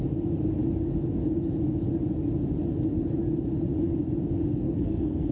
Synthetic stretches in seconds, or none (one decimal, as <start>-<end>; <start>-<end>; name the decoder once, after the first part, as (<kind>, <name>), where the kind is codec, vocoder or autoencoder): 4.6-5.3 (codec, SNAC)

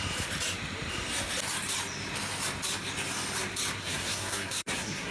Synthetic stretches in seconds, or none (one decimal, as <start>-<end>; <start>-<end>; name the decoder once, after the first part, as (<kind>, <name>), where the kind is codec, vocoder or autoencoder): 3.7-5.1 (codec, SNAC)

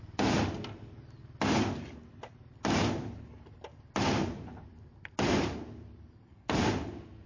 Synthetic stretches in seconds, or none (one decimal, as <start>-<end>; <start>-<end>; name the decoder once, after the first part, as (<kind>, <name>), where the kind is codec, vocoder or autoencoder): 3.7-6.7 (vocoder, BigVGAN v2)

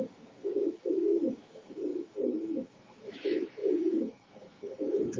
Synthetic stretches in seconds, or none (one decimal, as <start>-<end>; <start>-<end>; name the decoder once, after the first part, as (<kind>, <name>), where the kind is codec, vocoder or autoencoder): 0.0-5.2 (autoencoder, DAC-VAE)

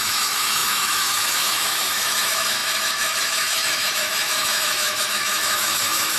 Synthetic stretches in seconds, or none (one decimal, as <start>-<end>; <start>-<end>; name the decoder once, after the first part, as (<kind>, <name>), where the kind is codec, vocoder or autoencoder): 0.0-6.2 (autoencoder, DAC-VAE)

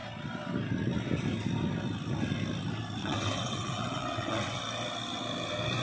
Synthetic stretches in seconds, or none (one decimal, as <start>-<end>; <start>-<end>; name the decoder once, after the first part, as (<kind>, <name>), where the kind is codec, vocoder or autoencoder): 3.0-4.6 (vocoder, WaveNeXt)